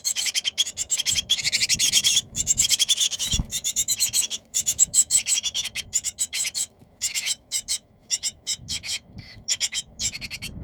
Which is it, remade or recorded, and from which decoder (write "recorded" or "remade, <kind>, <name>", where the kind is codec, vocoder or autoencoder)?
remade, autoencoder, DAC-VAE